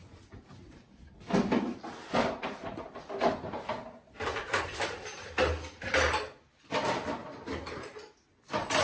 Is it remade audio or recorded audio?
recorded